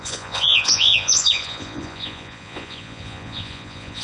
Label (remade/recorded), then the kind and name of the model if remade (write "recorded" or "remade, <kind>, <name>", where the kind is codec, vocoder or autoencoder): remade, vocoder, Vocos